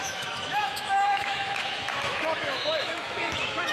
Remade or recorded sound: remade